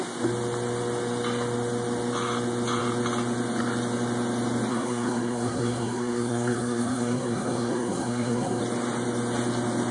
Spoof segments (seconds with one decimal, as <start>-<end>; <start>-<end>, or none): 4.7-8.6